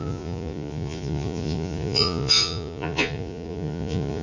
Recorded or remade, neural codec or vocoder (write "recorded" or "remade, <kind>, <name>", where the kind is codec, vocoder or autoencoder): remade, vocoder, Vocos